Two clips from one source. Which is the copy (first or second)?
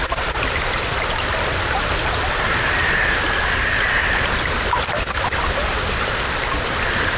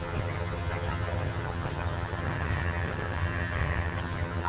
second